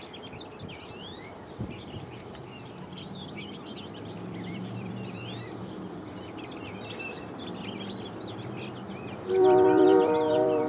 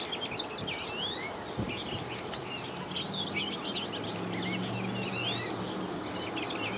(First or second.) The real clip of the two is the second